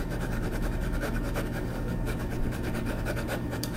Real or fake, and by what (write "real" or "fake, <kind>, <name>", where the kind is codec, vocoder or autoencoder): fake, codec, DAC